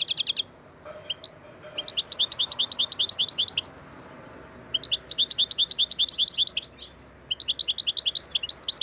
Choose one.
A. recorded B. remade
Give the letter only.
A